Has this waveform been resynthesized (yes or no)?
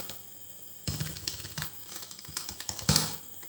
yes